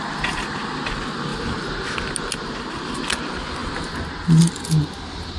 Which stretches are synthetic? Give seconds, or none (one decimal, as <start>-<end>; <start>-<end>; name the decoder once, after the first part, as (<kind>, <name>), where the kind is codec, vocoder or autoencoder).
none